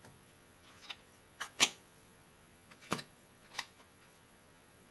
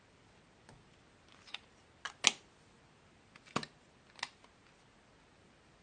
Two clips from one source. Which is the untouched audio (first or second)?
second